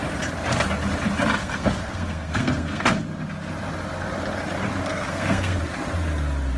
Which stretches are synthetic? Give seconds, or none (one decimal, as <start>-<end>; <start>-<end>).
1.4-2.9; 4.9-5.6